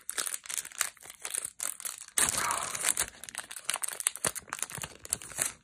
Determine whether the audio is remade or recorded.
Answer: recorded